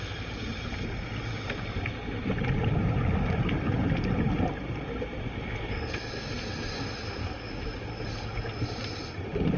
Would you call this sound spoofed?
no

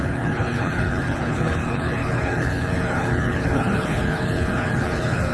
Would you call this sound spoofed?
yes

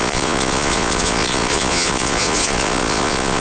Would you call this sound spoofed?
yes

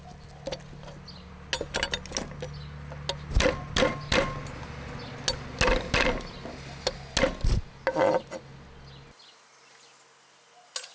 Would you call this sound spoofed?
no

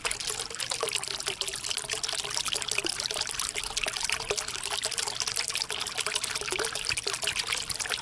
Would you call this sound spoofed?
no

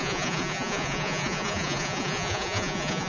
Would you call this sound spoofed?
yes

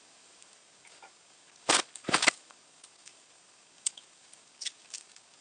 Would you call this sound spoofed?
yes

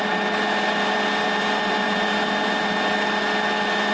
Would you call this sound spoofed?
no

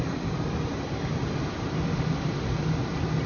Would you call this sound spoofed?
no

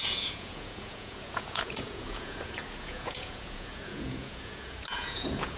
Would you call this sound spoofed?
yes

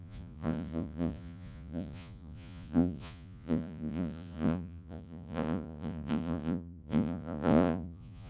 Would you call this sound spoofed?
yes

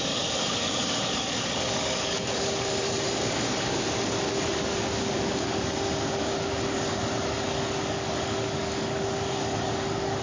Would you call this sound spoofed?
yes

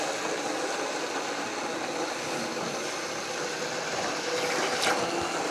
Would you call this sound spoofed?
no